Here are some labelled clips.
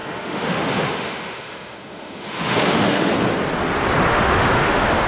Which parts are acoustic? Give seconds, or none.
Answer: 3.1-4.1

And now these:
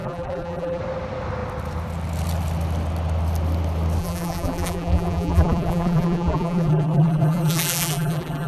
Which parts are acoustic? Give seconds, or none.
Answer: 0.8-4.0